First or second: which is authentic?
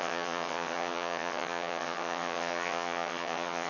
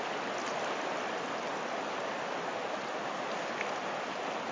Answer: second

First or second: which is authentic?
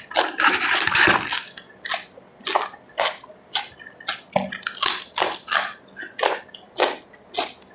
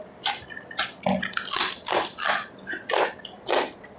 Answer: first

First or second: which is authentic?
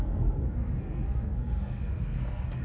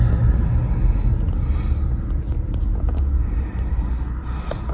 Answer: second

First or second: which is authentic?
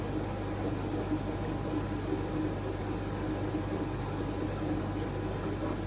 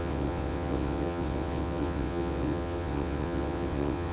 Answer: first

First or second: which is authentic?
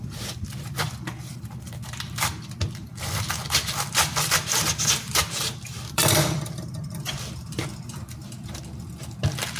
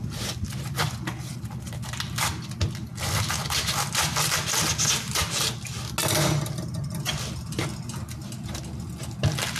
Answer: second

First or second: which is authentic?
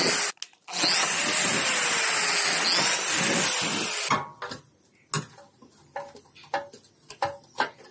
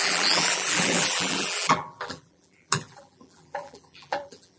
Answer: first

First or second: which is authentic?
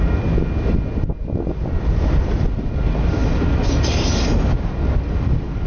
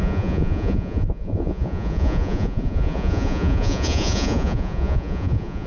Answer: first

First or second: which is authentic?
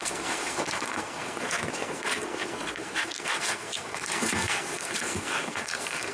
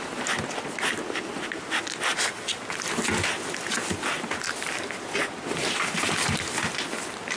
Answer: second